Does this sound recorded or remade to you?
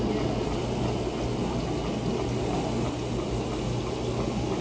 recorded